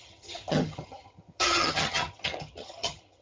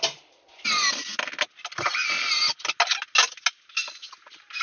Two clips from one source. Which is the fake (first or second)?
first